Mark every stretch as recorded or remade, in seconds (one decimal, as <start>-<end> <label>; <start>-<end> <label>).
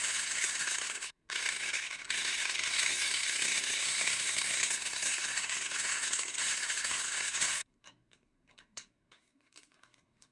0.0-10.3 remade